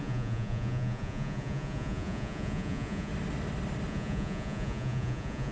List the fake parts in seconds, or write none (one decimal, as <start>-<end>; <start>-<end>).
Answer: 0.0-3.1; 3.9-5.5